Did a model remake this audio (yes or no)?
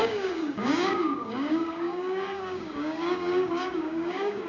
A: yes